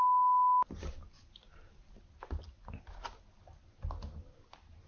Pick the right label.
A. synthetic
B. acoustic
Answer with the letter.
B